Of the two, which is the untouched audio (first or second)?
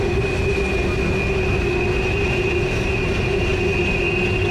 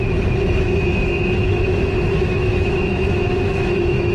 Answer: first